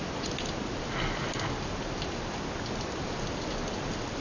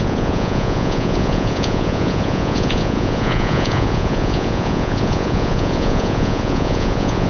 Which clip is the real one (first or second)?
first